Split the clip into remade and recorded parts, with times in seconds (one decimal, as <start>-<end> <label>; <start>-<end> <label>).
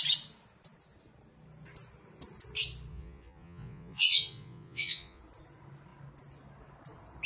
0.0-2.9 recorded; 2.9-5.2 remade; 5.2-7.3 recorded